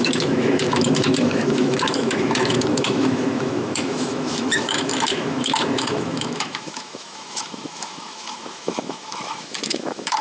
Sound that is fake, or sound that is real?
fake